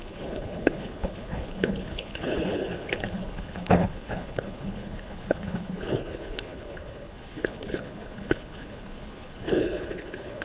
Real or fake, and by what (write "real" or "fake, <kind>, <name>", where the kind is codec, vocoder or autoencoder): fake, codec, HILCodec